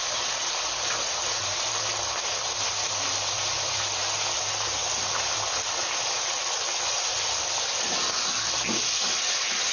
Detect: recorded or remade recorded